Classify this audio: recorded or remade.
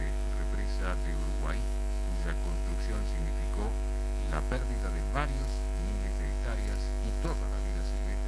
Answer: remade